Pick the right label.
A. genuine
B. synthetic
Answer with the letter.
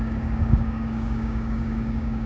B